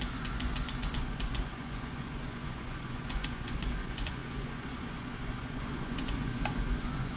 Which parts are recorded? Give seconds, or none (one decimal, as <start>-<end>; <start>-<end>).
none